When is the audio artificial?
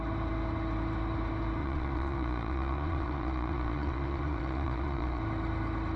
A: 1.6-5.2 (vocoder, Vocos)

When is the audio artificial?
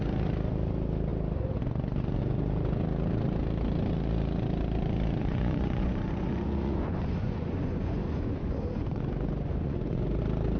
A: 5.2-10.2 (vocoder, Vocos)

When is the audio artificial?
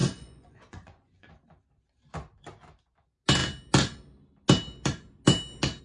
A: 0.0-1.3 (vocoder, Vocos)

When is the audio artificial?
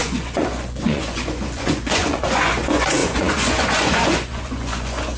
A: 0.0-5.2 (vocoder, Vocos)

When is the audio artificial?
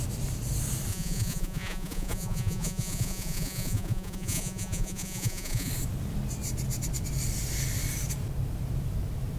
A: 0.9-5.7 (vocoder, Vocos)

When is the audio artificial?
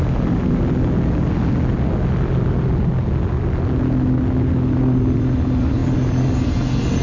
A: none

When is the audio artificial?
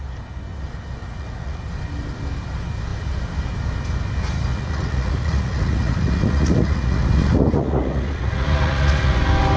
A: 1.0-1.6 (vocoder, Vocos); 4.5-9.2